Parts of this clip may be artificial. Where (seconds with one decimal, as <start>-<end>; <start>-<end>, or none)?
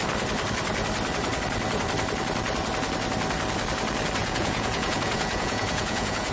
4.2-6.3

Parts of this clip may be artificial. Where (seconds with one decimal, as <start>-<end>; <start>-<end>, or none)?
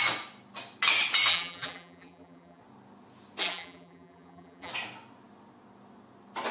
1.3-2.6; 3.4-4.7